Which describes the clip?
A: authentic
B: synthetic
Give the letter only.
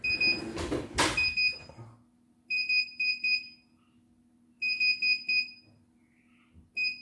A